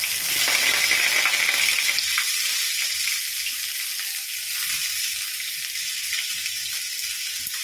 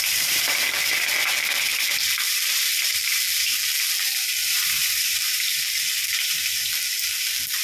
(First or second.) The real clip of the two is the first